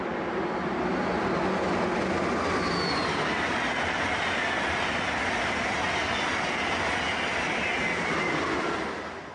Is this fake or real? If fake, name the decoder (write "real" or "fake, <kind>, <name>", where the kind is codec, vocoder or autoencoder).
real